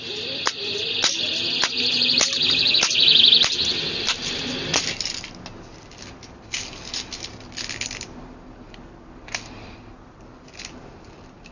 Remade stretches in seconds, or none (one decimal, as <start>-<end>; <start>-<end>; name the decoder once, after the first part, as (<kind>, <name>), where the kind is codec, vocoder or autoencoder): none